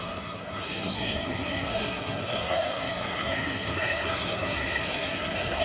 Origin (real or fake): fake